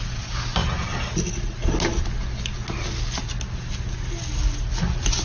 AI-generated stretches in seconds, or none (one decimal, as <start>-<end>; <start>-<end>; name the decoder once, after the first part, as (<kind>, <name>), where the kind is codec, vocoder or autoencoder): none